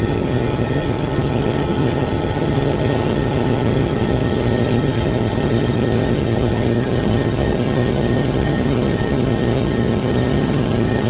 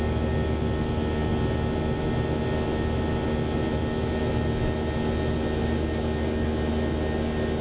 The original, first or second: second